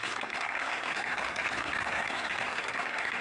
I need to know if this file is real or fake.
fake